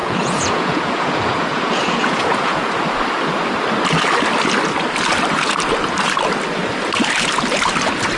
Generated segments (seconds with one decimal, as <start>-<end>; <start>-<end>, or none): 0.0-2.8